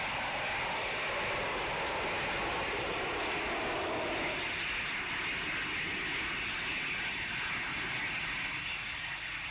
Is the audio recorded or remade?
recorded